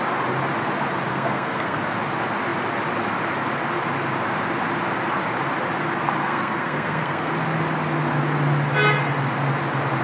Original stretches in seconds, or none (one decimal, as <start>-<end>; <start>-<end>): 0.0-1.1; 1.8-6.2; 7.3-10.0